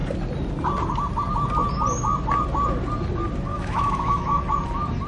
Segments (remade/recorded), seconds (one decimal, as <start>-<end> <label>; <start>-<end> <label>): 0.0-3.5 recorded; 3.5-4.4 remade; 4.4-5.1 recorded